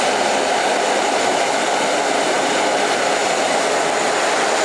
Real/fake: real